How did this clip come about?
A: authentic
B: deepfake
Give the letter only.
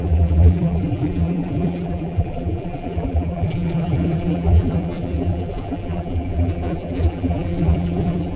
B